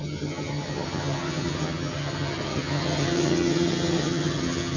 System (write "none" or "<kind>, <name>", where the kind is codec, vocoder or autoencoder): vocoder, HiFi-GAN